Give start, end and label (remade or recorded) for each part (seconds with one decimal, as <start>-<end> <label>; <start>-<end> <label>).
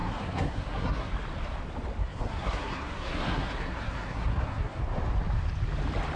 0.0-1.1 remade; 1.1-2.0 recorded; 2.0-4.8 remade; 4.8-6.2 recorded